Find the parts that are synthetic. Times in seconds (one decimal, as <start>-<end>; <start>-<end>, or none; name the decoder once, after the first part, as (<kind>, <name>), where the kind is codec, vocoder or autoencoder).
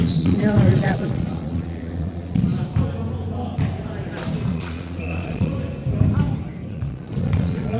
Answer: 0.0-2.5 (vocoder, Vocos); 4.5-5.5; 6.7-7.8